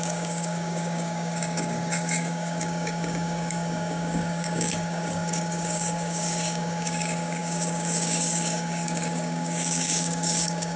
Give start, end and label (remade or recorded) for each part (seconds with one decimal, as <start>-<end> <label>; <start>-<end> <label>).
0.0-10.8 remade